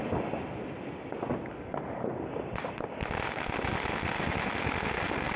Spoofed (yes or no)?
no